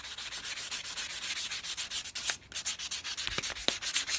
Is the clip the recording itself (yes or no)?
yes